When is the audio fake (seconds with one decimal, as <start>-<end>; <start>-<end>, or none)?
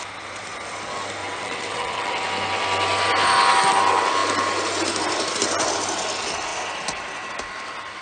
1.2-2.1